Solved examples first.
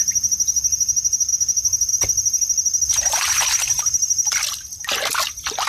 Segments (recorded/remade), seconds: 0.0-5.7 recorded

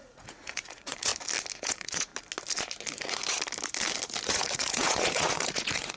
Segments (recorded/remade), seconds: 0.0-1.1 remade; 1.1-1.6 recorded; 1.6-2.1 remade; 2.1-4.2 recorded; 4.2-6.0 remade

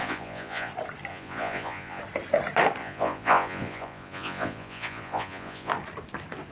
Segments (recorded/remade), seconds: 0.0-0.7 remade; 0.7-1.1 recorded; 1.1-2.0 remade; 2.0-2.8 recorded; 2.8-5.7 remade; 5.7-6.5 recorded

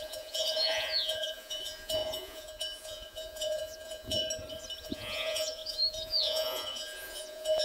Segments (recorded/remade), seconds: 0.0-4.2 remade; 4.2-4.8 recorded; 4.8-7.6 remade

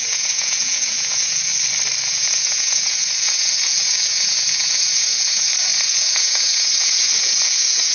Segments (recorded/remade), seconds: 0.0-1.5 remade; 1.5-2.1 recorded; 2.1-7.9 remade

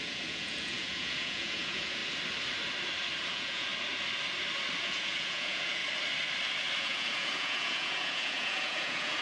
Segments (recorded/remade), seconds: 0.0-2.0 remade; 2.0-3.3 recorded; 3.3-3.7 remade; 3.7-4.8 recorded; 4.8-5.8 remade; 5.8-6.8 recorded; 6.8-9.2 remade

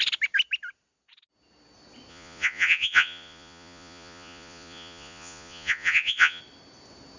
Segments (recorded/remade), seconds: 0.0-2.1 recorded; 2.1-6.4 remade; 6.4-7.2 recorded